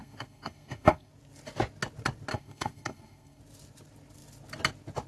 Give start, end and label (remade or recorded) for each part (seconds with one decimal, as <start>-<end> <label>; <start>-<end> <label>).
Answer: 0.0-1.1 remade; 1.1-2.3 recorded; 2.3-3.4 remade; 3.4-5.1 recorded